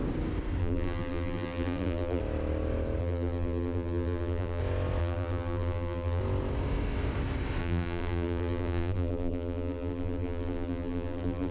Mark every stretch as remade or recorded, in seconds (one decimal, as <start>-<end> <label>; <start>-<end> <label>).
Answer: 0.0-0.6 recorded; 0.6-2.2 remade; 2.2-3.0 recorded; 3.0-4.6 remade; 4.6-5.0 recorded; 5.0-6.2 remade; 6.2-7.6 recorded; 7.6-11.5 remade